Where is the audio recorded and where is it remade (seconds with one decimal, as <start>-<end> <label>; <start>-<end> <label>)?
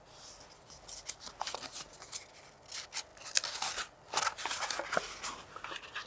0.0-6.1 recorded